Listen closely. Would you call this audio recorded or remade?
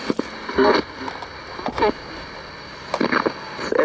recorded